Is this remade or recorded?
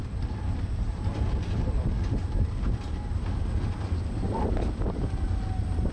recorded